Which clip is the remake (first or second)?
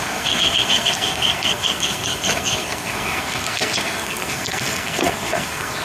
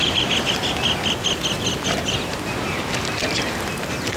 first